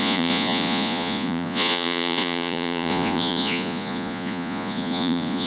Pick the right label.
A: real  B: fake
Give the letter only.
B